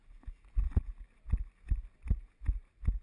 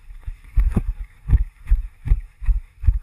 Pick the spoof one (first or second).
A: second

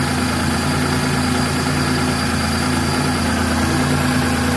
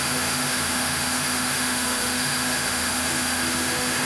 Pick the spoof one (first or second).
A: second